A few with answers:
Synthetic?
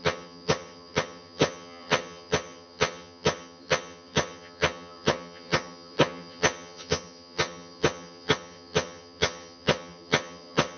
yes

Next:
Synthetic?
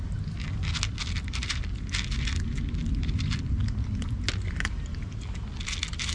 no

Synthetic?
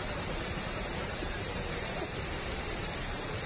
yes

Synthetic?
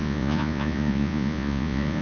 yes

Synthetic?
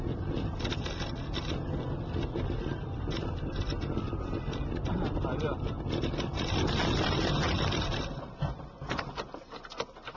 no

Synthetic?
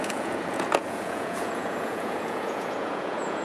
yes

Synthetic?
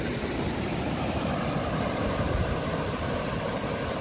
no